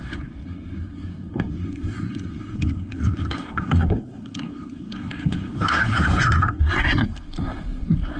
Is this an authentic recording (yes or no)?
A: no